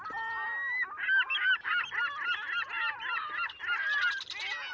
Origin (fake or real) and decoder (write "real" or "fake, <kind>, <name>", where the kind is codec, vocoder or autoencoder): real